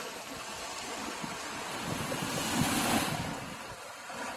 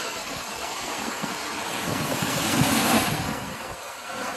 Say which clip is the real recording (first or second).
first